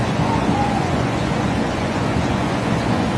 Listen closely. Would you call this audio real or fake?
fake